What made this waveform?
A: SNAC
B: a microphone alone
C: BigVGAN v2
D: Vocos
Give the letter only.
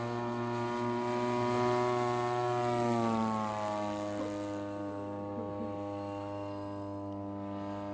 B